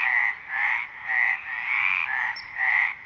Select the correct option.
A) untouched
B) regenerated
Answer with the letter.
B